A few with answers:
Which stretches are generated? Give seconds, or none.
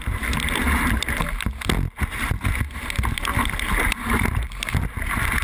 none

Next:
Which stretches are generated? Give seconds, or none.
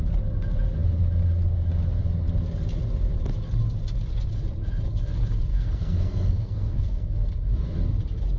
5.5-7.3 (codec, SNAC)